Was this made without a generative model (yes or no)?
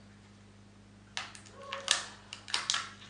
yes